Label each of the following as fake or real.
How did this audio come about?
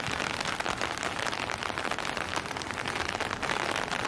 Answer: real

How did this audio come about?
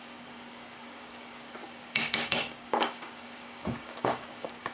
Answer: fake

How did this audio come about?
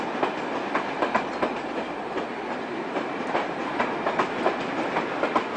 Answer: real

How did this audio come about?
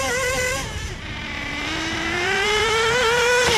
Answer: fake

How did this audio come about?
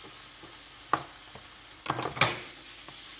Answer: real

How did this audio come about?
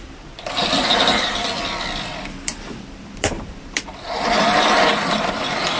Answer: fake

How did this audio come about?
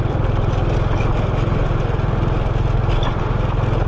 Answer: real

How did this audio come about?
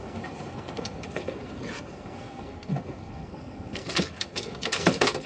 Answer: fake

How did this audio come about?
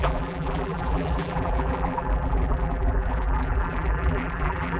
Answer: fake